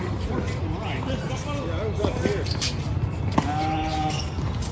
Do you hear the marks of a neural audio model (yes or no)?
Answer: no